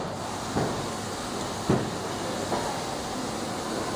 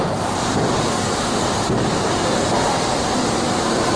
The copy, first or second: second